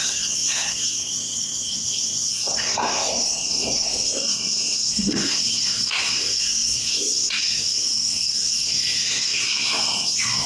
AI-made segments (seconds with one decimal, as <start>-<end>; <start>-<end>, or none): 0.0-10.5